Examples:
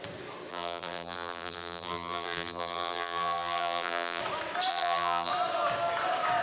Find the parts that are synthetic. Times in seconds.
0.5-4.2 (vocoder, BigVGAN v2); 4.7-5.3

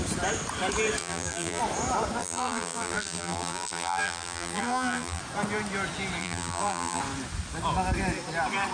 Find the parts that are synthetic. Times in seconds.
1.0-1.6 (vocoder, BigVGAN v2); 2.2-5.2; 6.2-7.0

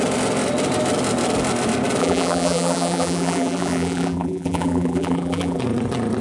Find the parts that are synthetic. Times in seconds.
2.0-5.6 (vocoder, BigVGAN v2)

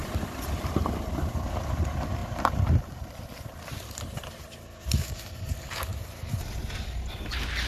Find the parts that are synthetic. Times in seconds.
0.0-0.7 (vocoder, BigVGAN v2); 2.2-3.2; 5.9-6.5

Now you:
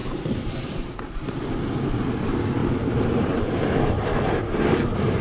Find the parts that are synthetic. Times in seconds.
0.0-0.7 (vocoder, BigVGAN v2); 2.6-4.1

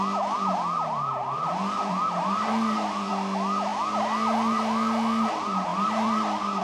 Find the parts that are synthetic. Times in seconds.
1.2-3.1 (vocoder, BigVGAN v2); 5.7-6.6